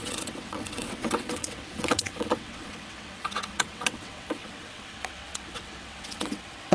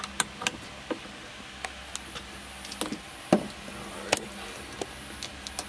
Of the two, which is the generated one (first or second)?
first